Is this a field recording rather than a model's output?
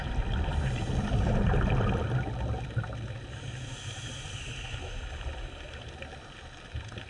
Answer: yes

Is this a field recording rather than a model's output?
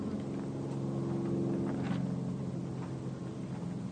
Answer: yes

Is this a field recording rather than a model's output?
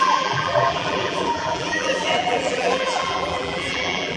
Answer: no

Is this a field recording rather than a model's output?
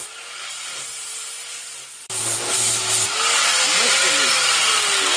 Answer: yes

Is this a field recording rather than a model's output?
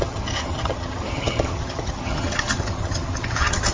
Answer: no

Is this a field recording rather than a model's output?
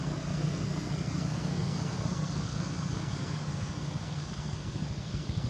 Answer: no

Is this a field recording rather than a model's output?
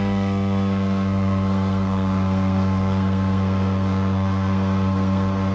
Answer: no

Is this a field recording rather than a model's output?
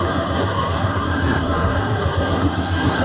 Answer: no